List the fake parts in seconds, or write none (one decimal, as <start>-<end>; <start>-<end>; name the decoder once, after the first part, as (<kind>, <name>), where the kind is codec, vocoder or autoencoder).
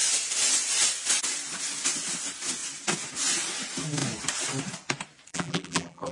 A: 5.3-6.1 (vocoder, BigVGAN v2)